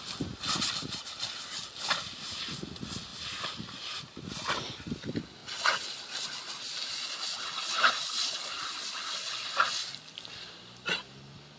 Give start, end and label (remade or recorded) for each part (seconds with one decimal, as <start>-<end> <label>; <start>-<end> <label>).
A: 0.0-11.6 recorded